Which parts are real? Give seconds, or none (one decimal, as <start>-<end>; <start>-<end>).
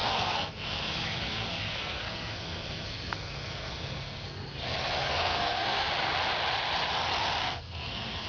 4.4-5.0; 5.9-7.4